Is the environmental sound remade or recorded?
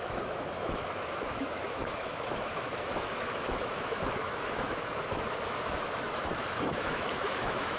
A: remade